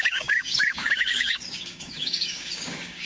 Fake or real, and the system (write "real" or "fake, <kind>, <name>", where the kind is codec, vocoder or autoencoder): fake, codec, DAC